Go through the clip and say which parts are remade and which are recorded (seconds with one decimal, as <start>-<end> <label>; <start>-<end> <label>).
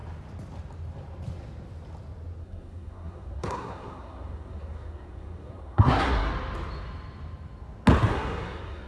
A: 0.0-2.4 recorded; 2.4-6.3 remade; 6.3-8.1 recorded; 8.1-8.9 remade